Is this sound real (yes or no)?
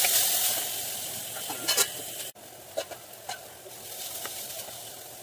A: no